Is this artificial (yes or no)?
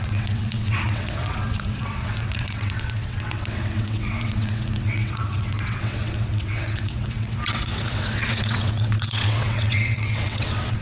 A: yes